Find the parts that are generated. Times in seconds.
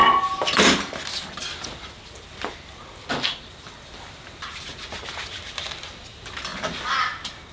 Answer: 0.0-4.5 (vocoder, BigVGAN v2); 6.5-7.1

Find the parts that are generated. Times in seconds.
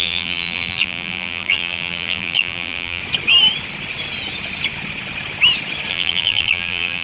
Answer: 0.0-3.0 (vocoder, BigVGAN v2); 5.9-7.0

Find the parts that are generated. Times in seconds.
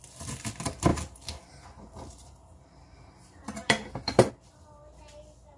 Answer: 0.9-4.3 (vocoder, BigVGAN v2)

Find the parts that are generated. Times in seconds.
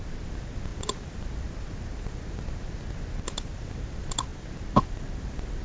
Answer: 0.7-3.1 (vocoder, BigVGAN v2); 4.3-5.0